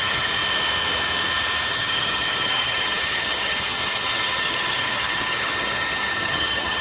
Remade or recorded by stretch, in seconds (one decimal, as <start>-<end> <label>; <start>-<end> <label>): 0.0-0.4 remade; 0.4-1.7 recorded; 1.7-6.8 remade